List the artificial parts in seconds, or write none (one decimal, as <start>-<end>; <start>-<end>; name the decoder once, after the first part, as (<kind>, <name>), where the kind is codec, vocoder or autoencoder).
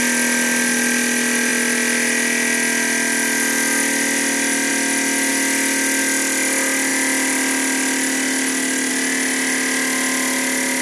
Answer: none